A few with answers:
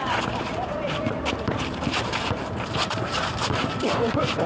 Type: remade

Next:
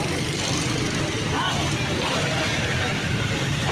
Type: recorded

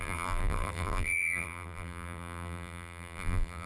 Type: remade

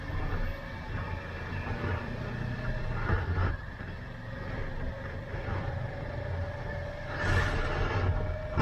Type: recorded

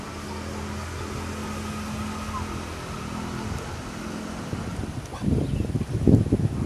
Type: recorded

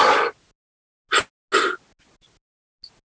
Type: recorded